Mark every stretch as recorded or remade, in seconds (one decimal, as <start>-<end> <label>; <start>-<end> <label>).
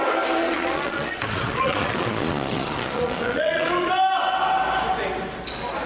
0.0-0.4 recorded; 0.4-3.9 remade; 3.9-5.9 recorded